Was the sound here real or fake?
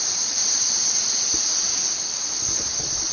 real